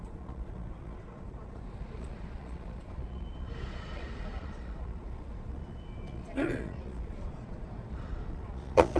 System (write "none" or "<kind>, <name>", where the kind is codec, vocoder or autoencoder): vocoder, Vocos